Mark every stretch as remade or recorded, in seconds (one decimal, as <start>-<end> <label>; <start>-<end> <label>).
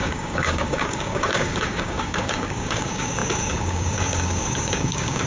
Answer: 0.0-5.3 remade